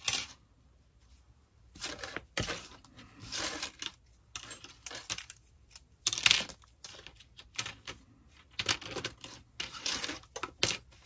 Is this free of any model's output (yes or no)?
yes